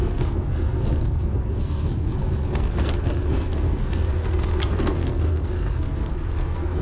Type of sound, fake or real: fake